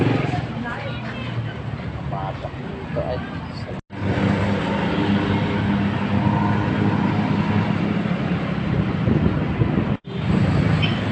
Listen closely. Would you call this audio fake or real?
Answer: real